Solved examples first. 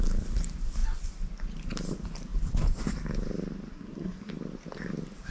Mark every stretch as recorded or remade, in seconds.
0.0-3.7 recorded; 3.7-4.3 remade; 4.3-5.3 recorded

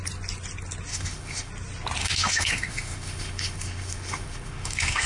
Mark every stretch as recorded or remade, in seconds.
0.0-0.9 recorded; 0.9-1.5 remade; 1.5-2.0 recorded; 2.0-5.1 remade

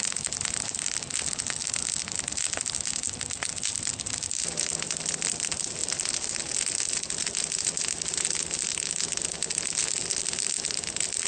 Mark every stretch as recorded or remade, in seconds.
0.0-11.3 recorded

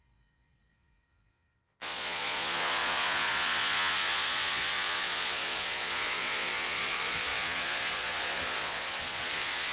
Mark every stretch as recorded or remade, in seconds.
0.0-9.7 remade

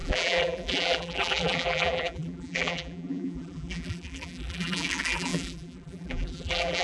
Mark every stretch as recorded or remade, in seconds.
0.0-6.8 remade

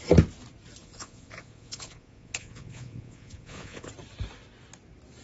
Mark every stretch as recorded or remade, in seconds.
0.0-0.8 recorded; 0.8-3.9 remade; 3.9-5.2 recorded

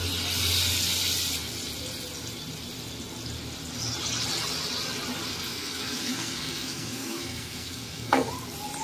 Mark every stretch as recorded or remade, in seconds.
0.0-5.3 recorded; 5.3-8.3 remade; 8.3-8.8 recorded

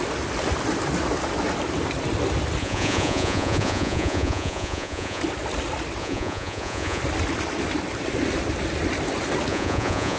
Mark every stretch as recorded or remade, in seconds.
0.0-2.6 recorded; 2.6-5.2 remade; 5.2-6.0 recorded; 6.0-7.0 remade; 7.0-9.5 recorded; 9.5-10.2 remade